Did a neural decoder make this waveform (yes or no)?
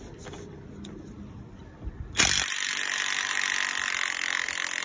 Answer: yes